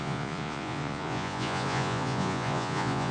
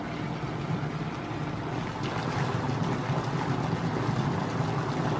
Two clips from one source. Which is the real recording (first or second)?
second